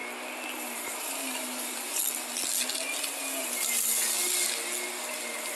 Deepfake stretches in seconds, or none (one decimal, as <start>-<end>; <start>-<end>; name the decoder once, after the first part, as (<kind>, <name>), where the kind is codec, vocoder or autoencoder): 0.6-2.0 (vocoder, BigVGAN v2); 3.2-4.0; 5.1-5.6